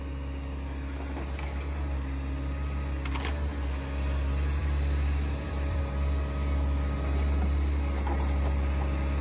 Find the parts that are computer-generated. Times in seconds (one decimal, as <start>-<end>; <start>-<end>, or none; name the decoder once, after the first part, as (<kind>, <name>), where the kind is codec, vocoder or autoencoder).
4.6-5.8 (vocoder, BigVGAN v2)